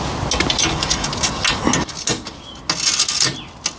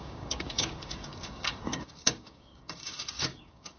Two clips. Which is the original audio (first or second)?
first